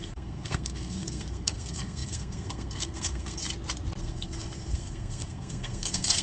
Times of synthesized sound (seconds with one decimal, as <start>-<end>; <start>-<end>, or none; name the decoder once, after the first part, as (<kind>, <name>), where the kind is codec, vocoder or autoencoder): 0.0-3.4 (codec, SNAC); 4.0-6.2